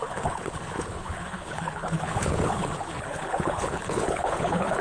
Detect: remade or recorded remade